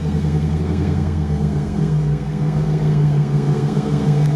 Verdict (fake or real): fake